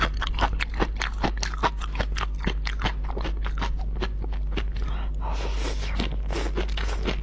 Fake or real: real